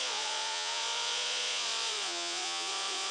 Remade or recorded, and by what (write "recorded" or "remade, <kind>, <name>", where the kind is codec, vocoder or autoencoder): remade, vocoder, Vocos